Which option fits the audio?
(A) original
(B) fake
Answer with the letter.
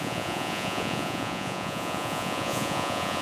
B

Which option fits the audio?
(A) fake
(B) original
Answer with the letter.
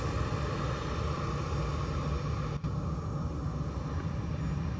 B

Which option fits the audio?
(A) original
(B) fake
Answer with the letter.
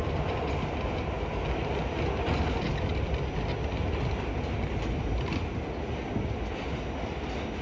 A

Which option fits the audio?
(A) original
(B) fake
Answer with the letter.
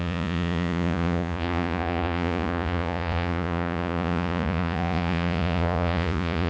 B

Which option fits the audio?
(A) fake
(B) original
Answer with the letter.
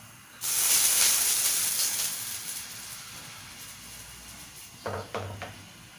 B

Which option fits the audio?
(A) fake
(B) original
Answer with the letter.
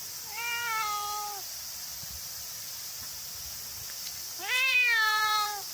A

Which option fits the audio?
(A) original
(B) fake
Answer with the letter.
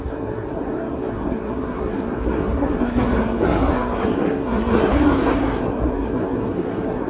B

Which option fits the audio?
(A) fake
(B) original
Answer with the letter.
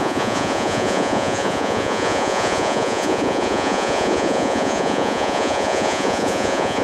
A